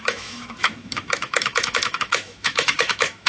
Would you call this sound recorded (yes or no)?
no